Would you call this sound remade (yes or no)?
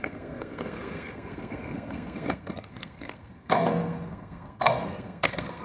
yes